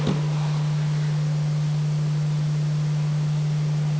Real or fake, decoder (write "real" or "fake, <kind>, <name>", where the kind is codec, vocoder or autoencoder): real